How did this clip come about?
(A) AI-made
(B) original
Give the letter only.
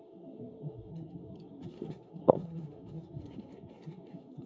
A